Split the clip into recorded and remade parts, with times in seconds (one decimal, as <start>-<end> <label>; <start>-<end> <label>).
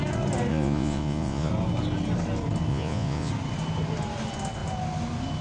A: 0.0-0.5 recorded; 0.5-1.5 remade; 1.5-2.7 recorded; 2.7-3.3 remade; 3.3-5.4 recorded